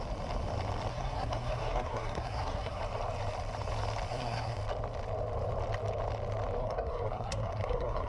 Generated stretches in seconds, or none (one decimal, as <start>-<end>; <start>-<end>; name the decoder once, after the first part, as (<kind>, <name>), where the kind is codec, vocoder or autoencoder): 0.9-2.8 (codec, SNAC); 4.1-4.6; 6.6-8.1